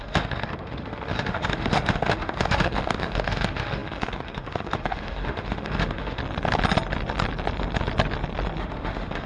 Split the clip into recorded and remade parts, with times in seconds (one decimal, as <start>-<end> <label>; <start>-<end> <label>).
0.0-6.2 remade; 6.2-8.6 recorded; 8.6-9.3 remade